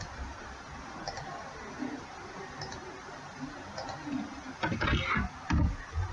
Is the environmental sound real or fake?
real